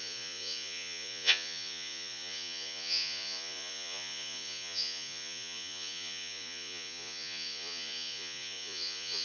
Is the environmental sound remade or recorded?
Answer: remade